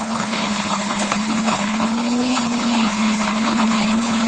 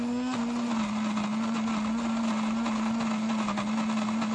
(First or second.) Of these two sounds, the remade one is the first